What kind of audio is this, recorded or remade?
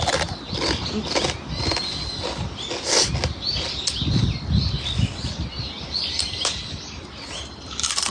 recorded